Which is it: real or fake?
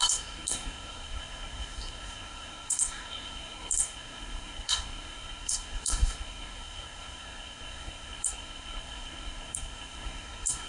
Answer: fake